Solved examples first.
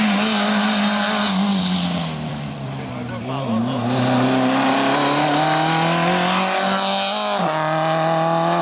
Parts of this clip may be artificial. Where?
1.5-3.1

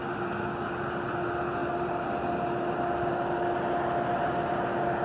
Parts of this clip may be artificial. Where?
none

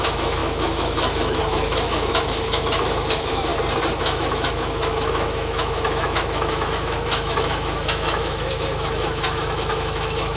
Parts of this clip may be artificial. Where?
0.0-3.5; 4.0-10.4

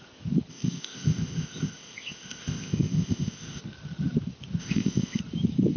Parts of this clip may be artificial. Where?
0.5-3.6; 4.6-5.2

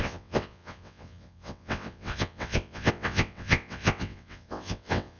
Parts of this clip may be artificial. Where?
0.0-5.2

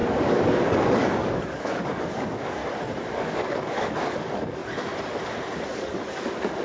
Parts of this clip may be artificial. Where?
0.0-2.6; 3.1-4.6; 5.8-6.6

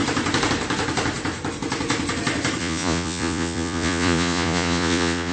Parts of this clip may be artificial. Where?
2.6-5.3

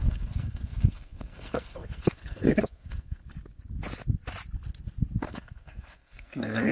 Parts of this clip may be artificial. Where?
0.0-3.2; 5.2-6.7